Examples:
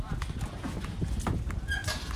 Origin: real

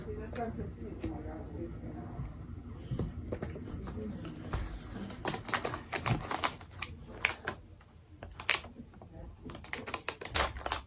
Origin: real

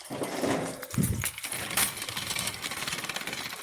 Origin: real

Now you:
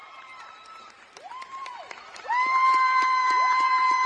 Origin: fake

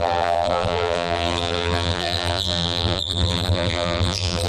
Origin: fake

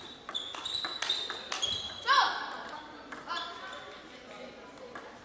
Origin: fake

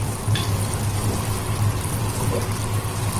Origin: real